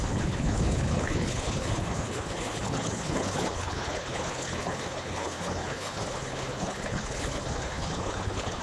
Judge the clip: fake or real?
fake